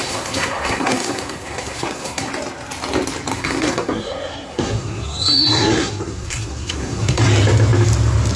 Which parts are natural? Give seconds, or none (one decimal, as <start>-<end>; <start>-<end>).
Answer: 2.3-3.3; 7.2-8.4